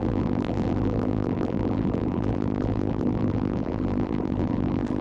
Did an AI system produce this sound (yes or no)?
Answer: yes